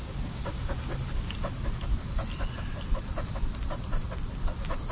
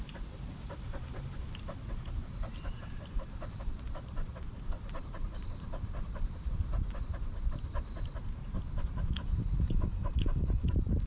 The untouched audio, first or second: first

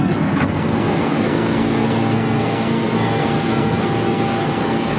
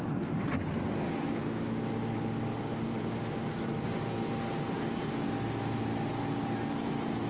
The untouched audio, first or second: second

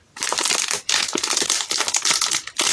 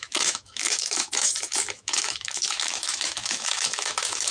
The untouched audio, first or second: first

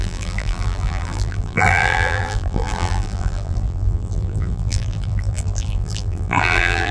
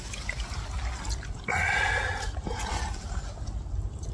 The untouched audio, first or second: second